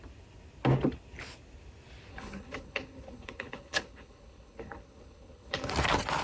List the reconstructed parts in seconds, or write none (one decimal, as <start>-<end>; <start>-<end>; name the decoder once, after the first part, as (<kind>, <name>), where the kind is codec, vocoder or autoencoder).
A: 2.1-5.7 (codec, HILCodec)